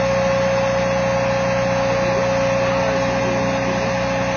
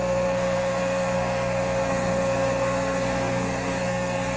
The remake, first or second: second